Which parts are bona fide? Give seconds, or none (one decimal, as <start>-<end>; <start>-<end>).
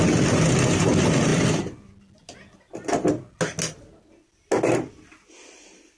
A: 0.0-6.0